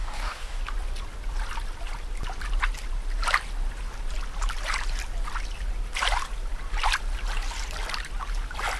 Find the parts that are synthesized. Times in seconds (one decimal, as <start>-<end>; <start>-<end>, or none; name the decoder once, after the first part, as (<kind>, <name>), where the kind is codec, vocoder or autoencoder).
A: 0.0-0.6 (codec, DAC)